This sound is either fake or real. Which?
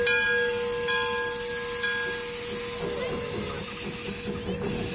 real